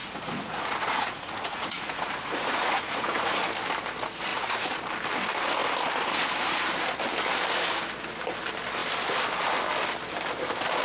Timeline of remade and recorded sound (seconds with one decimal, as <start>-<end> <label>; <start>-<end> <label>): 0.0-3.4 remade; 3.4-4.3 recorded; 4.3-4.8 remade; 4.8-10.8 recorded